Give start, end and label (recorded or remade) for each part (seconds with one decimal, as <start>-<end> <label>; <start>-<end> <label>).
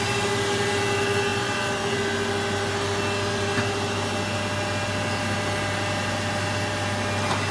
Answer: 0.0-7.5 recorded